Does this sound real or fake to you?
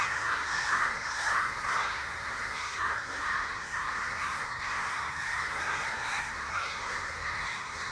fake